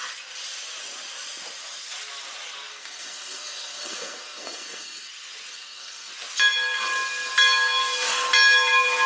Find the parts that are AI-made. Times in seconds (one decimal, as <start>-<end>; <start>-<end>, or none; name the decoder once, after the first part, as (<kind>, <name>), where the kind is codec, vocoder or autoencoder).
2.7-5.1 (codec, SNAC); 5.5-6.1